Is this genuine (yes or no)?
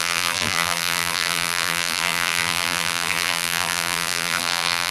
no